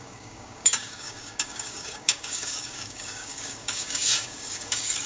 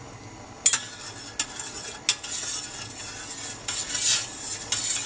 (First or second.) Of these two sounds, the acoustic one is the second